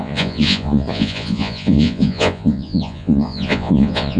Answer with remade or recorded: remade